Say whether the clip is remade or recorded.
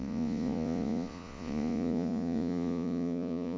remade